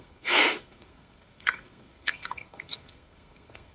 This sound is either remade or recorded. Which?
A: remade